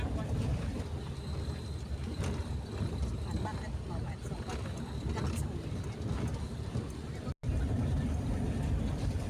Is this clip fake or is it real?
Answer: real